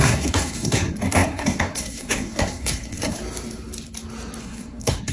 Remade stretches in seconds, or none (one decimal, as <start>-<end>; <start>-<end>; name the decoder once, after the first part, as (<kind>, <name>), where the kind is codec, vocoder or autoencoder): 0.0-3.2 (codec, SNAC); 4.4-5.1